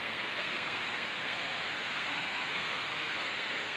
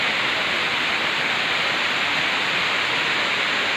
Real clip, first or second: second